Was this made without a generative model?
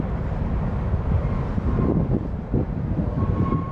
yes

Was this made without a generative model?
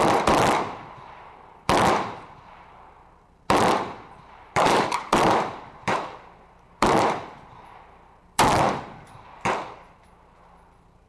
no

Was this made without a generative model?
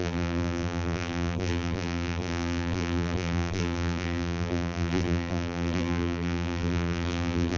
no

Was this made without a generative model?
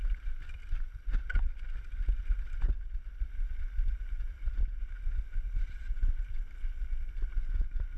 yes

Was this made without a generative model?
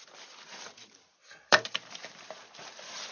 no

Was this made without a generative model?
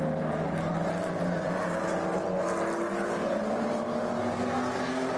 yes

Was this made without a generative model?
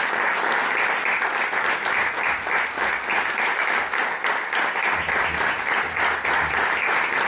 yes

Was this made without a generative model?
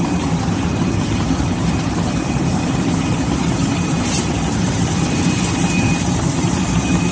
no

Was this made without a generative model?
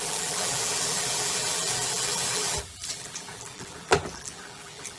no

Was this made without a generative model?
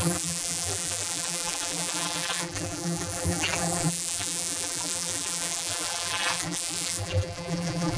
no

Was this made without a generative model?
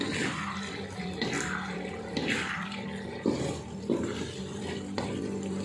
no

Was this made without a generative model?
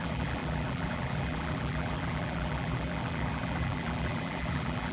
no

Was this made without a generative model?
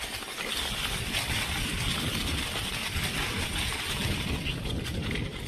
no